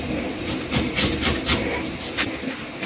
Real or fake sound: real